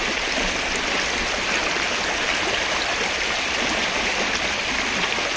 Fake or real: real